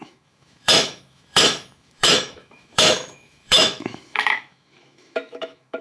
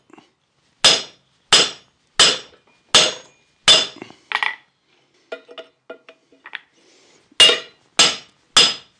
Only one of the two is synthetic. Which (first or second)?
first